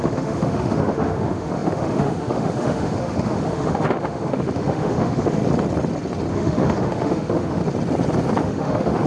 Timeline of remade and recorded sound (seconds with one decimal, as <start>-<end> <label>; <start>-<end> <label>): 0.0-5.4 remade; 5.4-6.3 recorded; 6.3-7.6 remade; 7.6-8.4 recorded; 8.4-9.1 remade